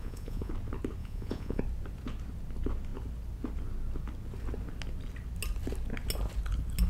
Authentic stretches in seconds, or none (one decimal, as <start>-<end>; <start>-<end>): 0.5-1.0; 1.6-6.9